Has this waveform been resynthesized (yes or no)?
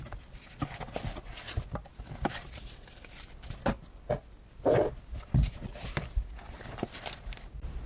no